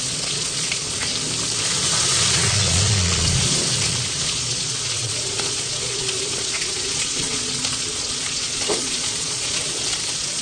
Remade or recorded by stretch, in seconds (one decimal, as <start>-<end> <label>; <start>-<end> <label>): 0.0-1.1 remade; 1.1-1.6 recorded; 1.6-10.4 remade

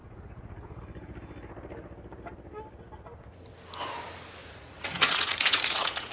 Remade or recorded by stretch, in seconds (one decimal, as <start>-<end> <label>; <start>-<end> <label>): 0.0-0.8 remade; 0.8-4.4 recorded; 4.4-6.1 remade

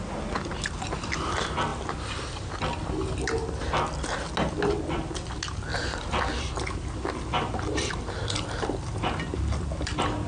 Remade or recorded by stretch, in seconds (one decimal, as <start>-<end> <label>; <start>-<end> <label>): 0.0-10.3 recorded

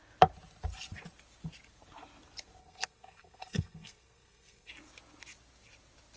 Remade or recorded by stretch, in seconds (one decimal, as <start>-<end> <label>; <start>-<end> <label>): 0.0-2.6 recorded; 2.6-4.7 remade; 4.7-6.2 recorded